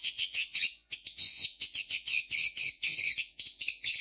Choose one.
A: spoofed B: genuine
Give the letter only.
A